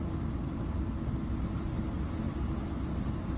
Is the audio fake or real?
real